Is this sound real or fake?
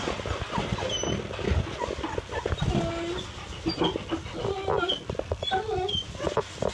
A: real